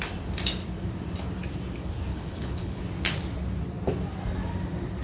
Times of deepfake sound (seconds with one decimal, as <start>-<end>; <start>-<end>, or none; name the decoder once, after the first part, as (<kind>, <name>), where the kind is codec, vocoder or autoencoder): 2.1-2.8 (codec, HILCodec)